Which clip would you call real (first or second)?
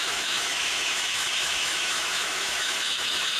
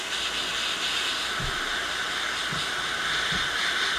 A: second